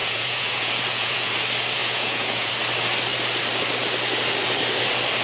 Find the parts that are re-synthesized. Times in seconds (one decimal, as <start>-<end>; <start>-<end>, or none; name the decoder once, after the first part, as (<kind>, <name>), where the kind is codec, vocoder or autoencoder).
0.0-1.3 (vocoder, Vocos); 1.8-2.5